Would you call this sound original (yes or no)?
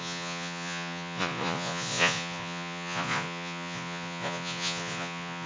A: no